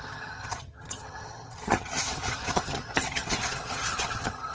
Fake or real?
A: fake